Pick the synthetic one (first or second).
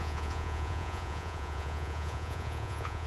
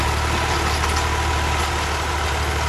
first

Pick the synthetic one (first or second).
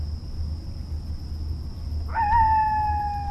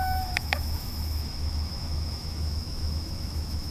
second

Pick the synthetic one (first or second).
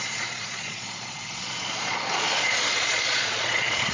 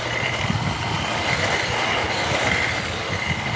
first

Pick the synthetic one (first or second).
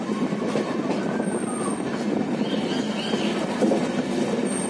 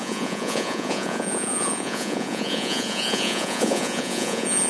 second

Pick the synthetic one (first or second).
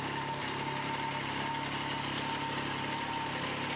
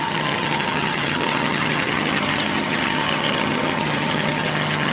second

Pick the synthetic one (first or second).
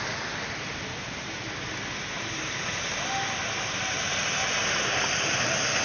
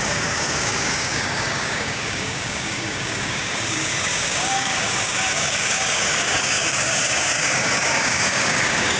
second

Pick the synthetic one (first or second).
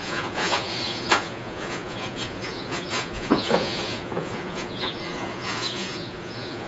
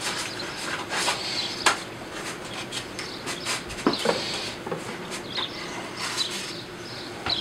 first